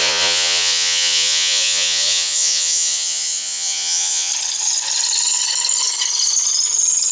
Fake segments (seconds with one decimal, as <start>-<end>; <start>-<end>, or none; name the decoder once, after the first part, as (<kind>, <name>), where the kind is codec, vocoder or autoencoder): 0.0-4.3 (vocoder, Vocos)